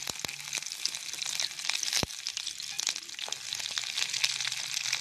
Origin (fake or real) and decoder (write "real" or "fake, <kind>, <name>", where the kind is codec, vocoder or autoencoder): real